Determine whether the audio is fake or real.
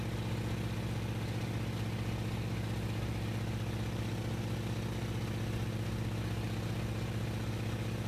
real